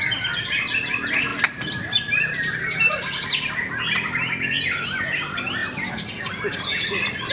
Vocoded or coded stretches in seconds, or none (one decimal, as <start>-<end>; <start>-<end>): 1.3-2.8